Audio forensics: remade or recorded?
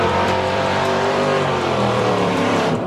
remade